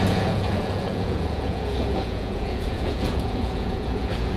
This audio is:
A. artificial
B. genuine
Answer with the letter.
A